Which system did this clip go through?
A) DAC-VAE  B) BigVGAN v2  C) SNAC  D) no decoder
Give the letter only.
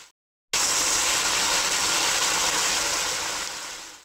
D